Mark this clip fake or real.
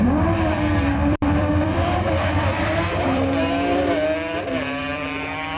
fake